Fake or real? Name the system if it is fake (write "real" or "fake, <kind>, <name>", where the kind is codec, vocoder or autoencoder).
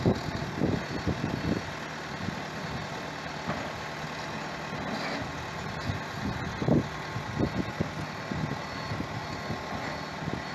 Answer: real